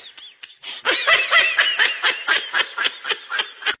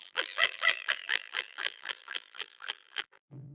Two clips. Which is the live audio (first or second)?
first